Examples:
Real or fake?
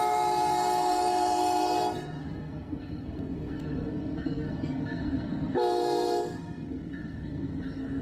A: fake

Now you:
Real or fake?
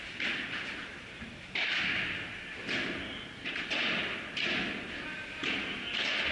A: real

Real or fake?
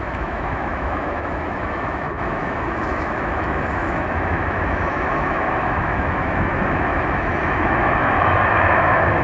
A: fake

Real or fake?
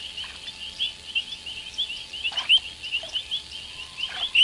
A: real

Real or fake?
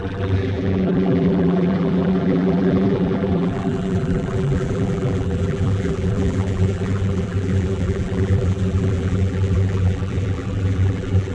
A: fake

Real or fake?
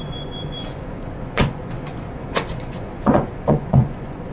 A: fake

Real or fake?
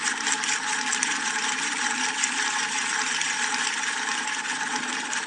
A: real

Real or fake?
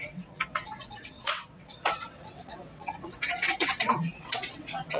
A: fake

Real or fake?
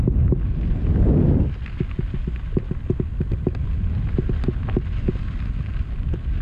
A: real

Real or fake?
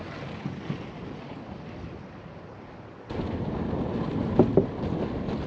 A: real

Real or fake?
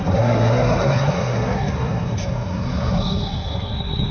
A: fake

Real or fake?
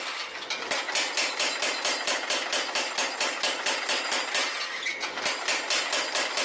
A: real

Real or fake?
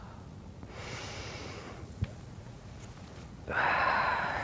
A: fake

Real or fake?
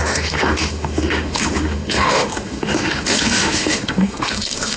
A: fake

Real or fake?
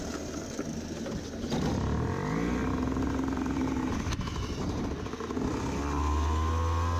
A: real